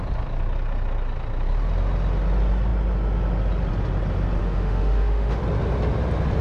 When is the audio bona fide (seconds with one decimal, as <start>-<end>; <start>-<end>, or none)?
0.0-4.4; 5.4-6.4

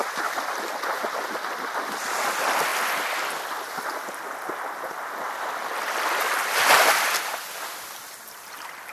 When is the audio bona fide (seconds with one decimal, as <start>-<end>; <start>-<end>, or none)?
0.0-8.9